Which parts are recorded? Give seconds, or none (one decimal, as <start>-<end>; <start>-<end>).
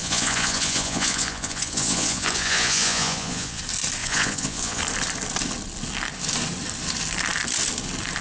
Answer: 3.6-4.0; 4.8-8.2